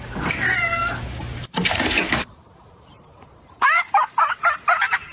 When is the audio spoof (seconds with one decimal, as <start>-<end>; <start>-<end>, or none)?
0.8-3.9